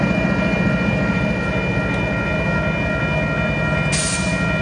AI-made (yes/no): no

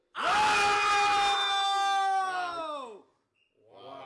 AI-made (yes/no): no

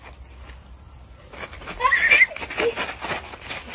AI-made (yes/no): no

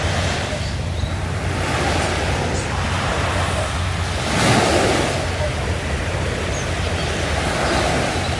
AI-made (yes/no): no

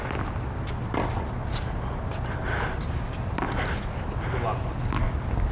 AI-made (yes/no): no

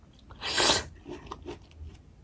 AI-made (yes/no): no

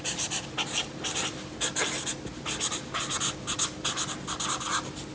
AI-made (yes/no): no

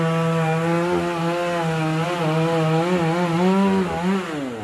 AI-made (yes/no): no